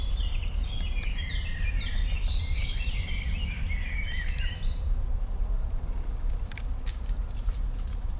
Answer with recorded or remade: remade